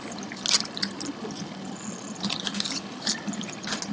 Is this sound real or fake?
real